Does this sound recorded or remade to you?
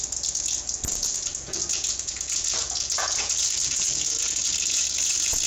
remade